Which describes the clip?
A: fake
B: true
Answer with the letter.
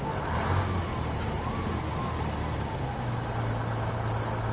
B